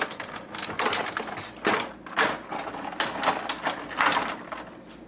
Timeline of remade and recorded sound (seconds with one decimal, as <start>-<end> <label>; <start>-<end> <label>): 0.0-5.1 recorded